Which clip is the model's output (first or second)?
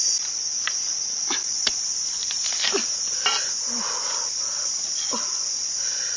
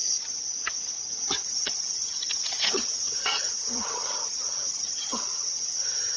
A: second